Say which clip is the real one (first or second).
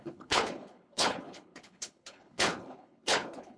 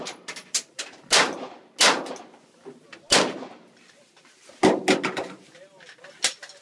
second